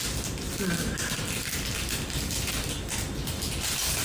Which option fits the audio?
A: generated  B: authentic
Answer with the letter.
B